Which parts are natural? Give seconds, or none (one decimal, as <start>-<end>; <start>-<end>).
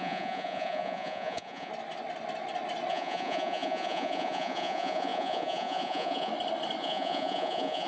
1.7-2.9; 6.3-6.8